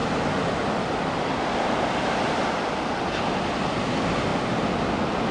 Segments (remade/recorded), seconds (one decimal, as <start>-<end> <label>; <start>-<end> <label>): 0.0-5.3 recorded